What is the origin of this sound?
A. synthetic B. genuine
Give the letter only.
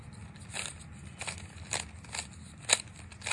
B